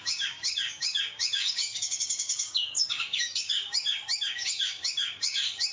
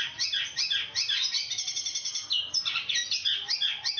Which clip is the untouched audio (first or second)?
second